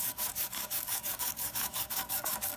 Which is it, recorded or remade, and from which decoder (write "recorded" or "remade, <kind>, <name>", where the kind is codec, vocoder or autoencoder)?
remade, codec, DAC